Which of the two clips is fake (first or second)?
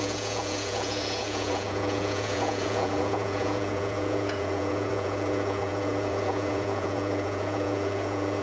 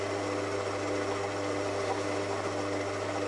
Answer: first